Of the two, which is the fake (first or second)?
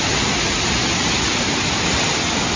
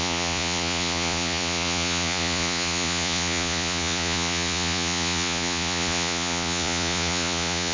second